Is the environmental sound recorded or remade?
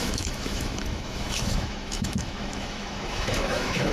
remade